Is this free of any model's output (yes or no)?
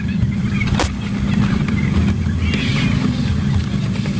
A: yes